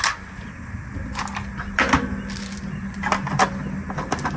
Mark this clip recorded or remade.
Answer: recorded